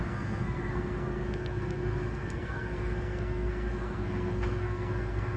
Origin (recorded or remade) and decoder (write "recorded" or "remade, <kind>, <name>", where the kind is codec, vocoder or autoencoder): remade, codec, SNAC